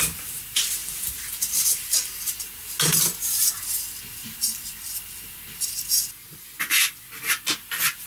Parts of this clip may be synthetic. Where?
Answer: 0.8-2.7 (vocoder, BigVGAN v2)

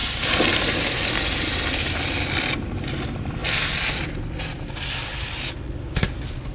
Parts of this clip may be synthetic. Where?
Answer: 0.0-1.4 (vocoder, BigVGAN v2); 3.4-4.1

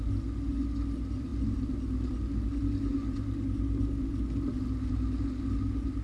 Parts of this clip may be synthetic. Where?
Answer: none

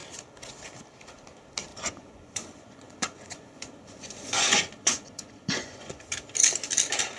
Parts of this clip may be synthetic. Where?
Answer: 1.7-6.0 (vocoder, Vocos)

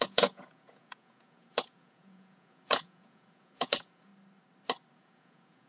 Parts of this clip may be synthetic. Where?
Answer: 0.0-4.1 (vocoder, Vocos); 4.9-5.7

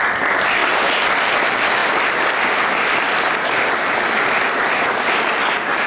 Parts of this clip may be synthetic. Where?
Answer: none